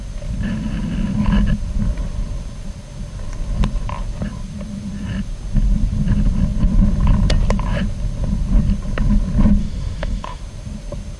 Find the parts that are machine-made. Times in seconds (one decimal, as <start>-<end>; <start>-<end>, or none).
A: 9.6-10.4

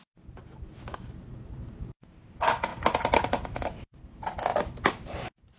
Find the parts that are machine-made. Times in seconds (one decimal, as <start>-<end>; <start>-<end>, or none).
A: none

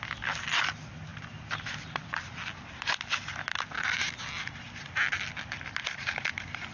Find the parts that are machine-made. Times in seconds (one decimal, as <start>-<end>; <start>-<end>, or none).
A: none

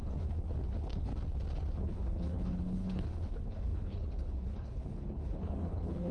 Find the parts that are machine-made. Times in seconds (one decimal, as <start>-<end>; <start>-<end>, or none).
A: 0.0-1.1; 1.7-6.1

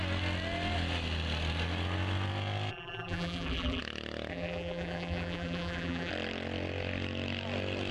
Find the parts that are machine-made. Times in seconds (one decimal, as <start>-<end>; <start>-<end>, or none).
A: 2.7-3.8; 4.3-6.1

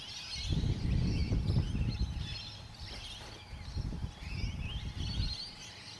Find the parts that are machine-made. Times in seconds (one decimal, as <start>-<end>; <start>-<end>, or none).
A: 1.2-4.8